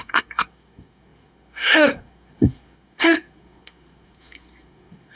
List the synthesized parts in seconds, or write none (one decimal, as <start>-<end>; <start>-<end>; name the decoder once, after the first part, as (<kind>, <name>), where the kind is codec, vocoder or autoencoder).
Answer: 0.0-5.2 (codec, SNAC)